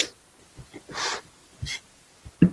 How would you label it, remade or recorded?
recorded